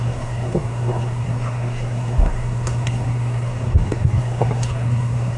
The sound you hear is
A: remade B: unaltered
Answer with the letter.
A